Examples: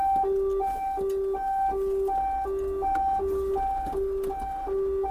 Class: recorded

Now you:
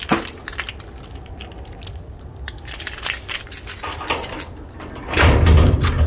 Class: recorded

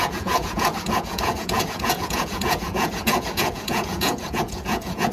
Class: remade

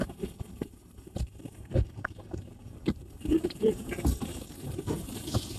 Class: remade